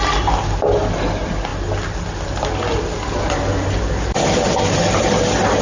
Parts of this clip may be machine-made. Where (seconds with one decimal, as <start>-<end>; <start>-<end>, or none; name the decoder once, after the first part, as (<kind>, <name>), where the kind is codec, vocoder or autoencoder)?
none

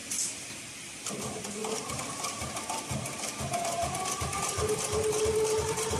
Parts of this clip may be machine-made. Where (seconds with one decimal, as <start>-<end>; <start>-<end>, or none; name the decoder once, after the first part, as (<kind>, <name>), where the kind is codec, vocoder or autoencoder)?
none